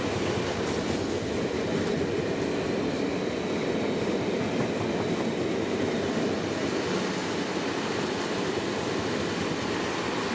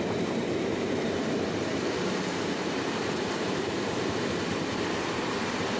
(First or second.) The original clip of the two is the first